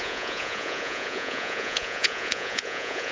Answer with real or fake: fake